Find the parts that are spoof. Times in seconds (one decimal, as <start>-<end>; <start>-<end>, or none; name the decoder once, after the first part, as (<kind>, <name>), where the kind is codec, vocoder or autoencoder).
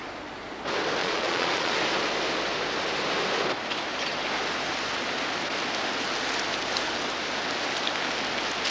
1.0-1.7 (vocoder, Vocos)